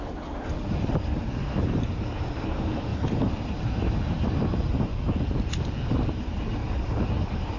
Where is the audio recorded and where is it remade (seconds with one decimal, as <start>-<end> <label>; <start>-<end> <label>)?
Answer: 0.0-4.9 remade; 4.9-6.1 recorded; 6.1-7.6 remade